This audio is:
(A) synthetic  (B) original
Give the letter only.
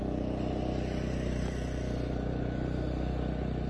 B